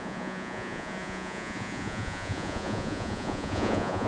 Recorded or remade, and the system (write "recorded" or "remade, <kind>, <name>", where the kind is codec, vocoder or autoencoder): remade, vocoder, Vocos